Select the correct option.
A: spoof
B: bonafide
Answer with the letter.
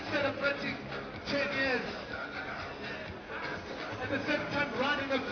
B